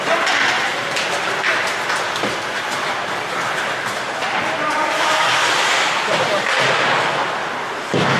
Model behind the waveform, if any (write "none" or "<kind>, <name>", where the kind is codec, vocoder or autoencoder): none